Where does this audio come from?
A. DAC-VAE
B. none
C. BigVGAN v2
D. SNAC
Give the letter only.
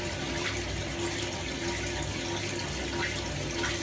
B